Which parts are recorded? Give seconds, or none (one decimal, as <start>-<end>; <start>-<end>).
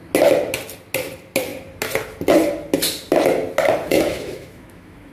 0.0-3.9